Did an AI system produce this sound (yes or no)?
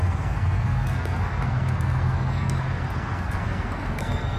yes